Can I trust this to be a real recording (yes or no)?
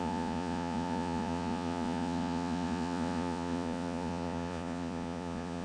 no